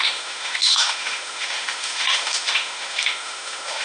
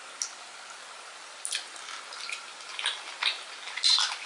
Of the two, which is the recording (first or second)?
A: second